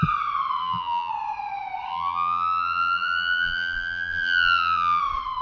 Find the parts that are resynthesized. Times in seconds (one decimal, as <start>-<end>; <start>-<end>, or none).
0.6-1.1; 1.9-5.0